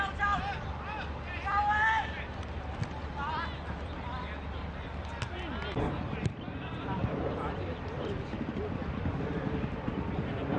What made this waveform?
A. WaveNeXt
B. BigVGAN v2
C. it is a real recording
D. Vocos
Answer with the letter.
C